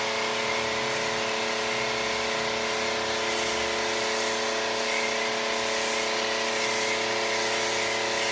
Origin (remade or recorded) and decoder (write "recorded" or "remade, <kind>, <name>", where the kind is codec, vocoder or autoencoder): recorded